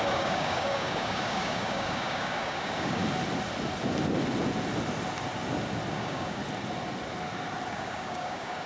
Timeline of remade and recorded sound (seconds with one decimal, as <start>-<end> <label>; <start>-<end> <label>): 0.0-3.0 remade; 3.0-5.9 recorded; 5.9-6.4 remade; 6.4-7.7 recorded; 7.7-8.7 remade